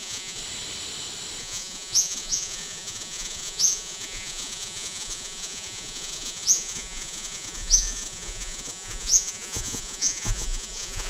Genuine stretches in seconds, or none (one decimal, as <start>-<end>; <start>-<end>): 0.4-1.4